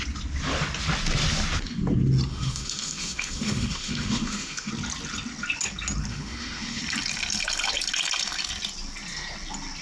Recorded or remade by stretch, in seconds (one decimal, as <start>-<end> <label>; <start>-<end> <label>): 0.0-2.3 recorded; 2.3-4.7 remade; 4.7-6.1 recorded; 6.1-6.8 remade; 6.8-9.8 recorded